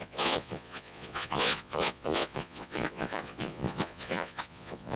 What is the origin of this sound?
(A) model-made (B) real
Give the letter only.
A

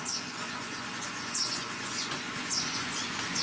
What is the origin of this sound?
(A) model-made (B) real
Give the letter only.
A